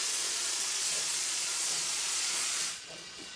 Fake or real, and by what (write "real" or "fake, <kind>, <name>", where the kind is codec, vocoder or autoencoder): fake, vocoder, Vocos